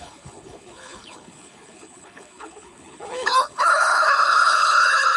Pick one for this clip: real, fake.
fake